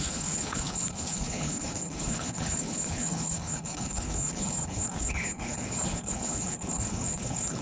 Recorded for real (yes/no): no